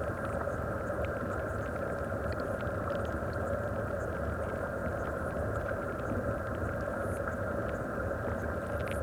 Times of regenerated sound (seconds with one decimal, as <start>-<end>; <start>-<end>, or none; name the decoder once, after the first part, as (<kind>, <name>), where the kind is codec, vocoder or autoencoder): 4.8-6.9 (vocoder, BigVGAN v2)